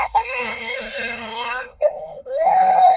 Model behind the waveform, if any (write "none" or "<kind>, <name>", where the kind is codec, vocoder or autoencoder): codec, SNAC